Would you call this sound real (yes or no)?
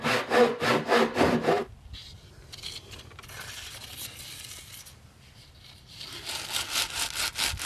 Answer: yes